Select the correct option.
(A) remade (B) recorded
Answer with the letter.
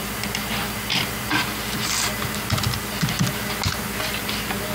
B